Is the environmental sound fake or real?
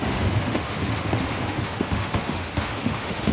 fake